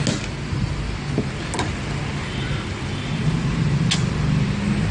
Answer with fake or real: real